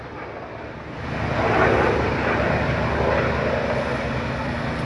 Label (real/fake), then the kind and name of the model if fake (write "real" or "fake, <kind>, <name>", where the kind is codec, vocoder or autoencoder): real